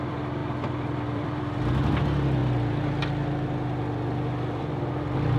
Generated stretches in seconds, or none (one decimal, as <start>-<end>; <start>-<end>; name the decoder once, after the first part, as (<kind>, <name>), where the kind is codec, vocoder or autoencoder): 0.0-2.4 (vocoder, BigVGAN v2); 4.6-5.4